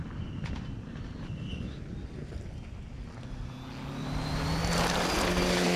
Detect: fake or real real